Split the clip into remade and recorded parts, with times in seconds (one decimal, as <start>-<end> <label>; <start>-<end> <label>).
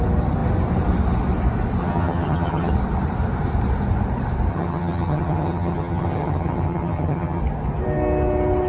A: 0.0-1.8 recorded; 1.8-2.7 remade; 2.7-4.5 recorded; 4.5-7.4 remade; 7.4-8.7 recorded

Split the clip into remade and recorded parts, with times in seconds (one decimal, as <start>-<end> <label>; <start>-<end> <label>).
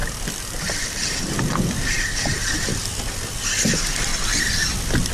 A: 0.0-2.0 remade; 2.0-5.1 recorded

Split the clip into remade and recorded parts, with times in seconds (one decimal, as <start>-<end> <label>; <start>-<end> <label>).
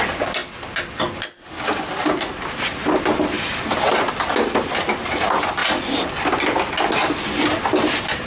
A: 0.0-8.3 recorded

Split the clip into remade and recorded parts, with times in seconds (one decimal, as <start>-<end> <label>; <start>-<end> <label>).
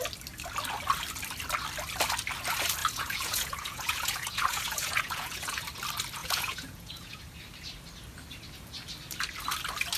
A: 0.0-2.8 recorded; 2.8-5.6 remade; 5.6-6.2 recorded; 6.2-7.2 remade; 7.2-10.0 recorded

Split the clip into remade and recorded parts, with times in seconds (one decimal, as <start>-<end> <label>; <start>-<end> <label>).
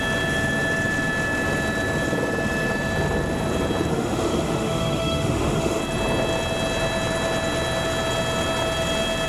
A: 0.0-3.9 recorded; 3.9-5.8 remade; 5.8-9.3 recorded